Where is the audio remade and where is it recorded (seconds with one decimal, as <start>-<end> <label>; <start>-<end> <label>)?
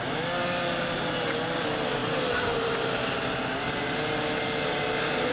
0.0-5.3 recorded